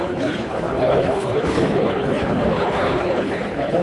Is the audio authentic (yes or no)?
no